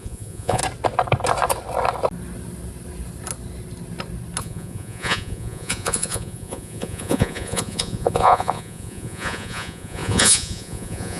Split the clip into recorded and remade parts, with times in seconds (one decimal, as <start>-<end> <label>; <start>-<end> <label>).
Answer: 0.0-0.6 remade; 0.6-4.4 recorded; 4.4-11.2 remade